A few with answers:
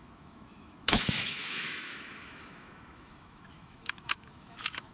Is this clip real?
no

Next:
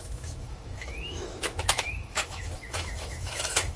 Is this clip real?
no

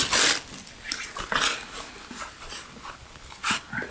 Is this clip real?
yes